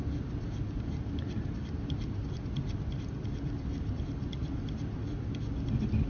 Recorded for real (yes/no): yes